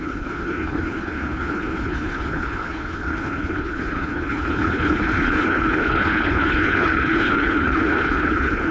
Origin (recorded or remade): remade